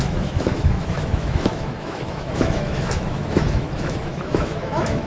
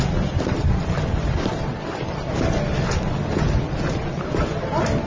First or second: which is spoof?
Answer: first